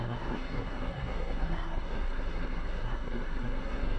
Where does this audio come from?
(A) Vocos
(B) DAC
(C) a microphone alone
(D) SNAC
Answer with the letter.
D